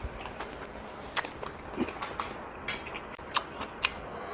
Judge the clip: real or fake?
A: real